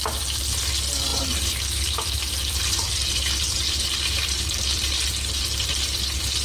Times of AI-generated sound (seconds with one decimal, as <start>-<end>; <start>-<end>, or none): 1.1-4.9